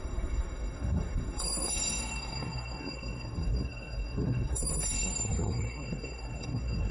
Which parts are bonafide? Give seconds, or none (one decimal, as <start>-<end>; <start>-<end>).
none